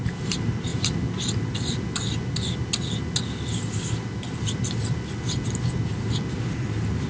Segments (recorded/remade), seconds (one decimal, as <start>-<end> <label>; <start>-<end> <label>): 0.0-7.1 recorded